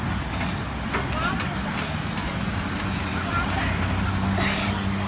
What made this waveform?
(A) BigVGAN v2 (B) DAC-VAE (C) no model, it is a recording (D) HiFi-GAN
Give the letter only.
C